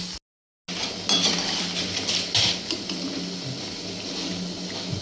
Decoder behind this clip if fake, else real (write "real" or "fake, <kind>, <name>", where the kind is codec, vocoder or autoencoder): real